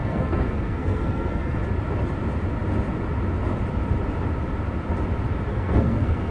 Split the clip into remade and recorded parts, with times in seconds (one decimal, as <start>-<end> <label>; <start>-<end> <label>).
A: 0.0-1.6 remade; 1.6-5.5 recorded; 5.5-6.3 remade

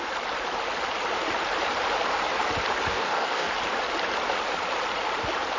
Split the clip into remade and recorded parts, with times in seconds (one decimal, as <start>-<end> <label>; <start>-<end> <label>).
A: 0.0-2.9 recorded; 2.9-3.5 remade; 3.5-5.6 recorded

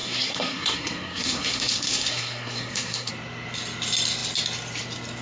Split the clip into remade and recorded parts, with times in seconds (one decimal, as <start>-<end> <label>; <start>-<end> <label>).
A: 0.0-3.1 remade; 3.1-5.2 recorded

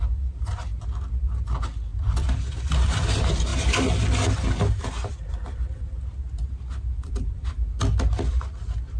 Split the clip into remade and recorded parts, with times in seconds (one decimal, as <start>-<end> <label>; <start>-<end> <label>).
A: 0.0-9.0 recorded

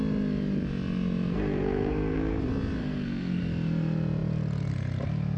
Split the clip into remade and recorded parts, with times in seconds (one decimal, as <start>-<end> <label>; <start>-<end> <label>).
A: 0.0-1.3 recorded; 1.3-2.4 remade; 2.4-2.8 recorded; 2.8-3.4 remade; 3.4-5.4 recorded

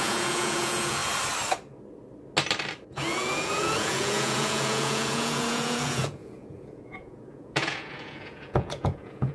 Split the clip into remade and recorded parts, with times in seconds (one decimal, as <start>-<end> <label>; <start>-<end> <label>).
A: 0.0-1.0 remade; 1.0-2.9 recorded; 2.9-9.3 remade

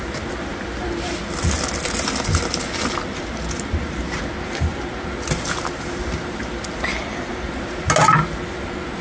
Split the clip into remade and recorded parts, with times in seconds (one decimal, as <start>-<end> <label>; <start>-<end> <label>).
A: 0.0-9.0 recorded